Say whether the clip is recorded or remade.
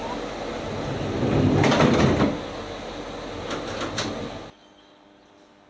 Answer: recorded